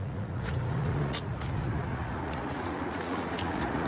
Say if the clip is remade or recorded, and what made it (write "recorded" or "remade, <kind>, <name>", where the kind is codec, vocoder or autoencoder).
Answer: remade, vocoder, Vocos